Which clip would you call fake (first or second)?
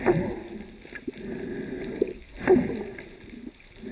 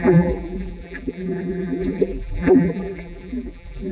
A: second